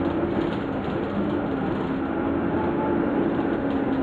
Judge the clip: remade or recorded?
recorded